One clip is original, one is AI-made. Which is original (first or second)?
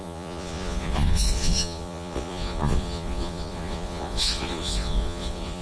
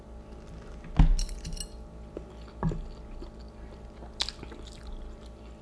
second